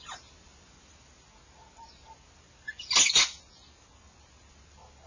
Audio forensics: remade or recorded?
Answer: recorded